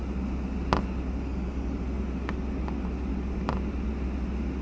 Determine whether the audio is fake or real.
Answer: real